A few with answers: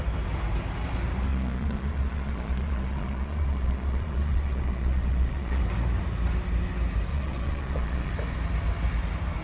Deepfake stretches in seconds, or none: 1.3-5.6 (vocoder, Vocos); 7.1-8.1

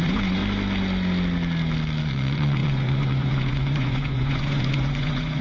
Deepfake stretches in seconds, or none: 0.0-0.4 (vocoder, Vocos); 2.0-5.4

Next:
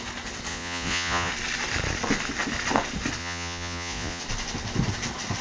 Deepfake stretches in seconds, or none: 0.5-1.3 (vocoder, Vocos); 3.2-4.2

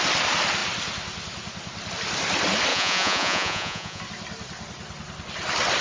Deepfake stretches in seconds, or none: 2.7-4.0 (vocoder, Vocos)

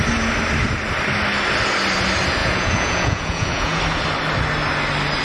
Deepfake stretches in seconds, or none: 2.4-3.8 (vocoder, Vocos)

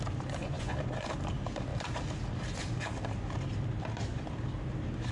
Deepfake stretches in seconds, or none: 0.4-1.1 (vocoder, Vocos)

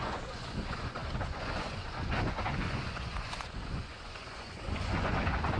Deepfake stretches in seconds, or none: 0.0-5.6 (vocoder, Vocos)